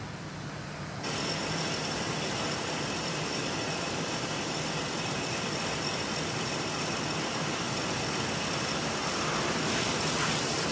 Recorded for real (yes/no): no